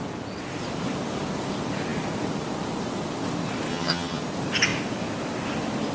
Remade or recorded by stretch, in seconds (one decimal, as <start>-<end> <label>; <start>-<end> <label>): 0.0-3.7 recorded; 3.7-4.2 remade; 4.2-5.9 recorded